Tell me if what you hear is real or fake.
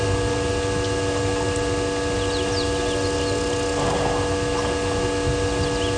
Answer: real